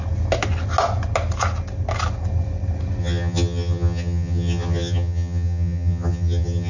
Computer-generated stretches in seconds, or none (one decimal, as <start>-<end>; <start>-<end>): 3.0-6.7